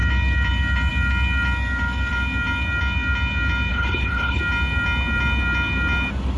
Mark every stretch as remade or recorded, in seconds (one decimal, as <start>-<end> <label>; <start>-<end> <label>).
0.0-3.7 recorded; 3.7-4.4 remade; 4.4-6.4 recorded